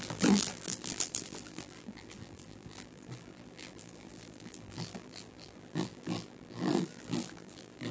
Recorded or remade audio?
remade